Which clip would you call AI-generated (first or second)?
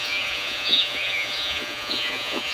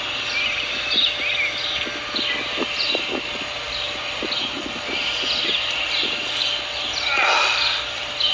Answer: first